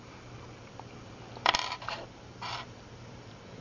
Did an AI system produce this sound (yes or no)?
yes